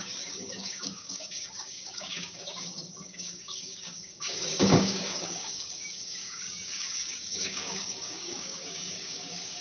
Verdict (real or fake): fake